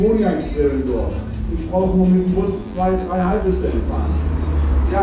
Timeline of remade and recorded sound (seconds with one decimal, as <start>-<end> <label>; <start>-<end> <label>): 0.0-2.6 recorded; 2.6-3.5 remade; 3.5-5.0 recorded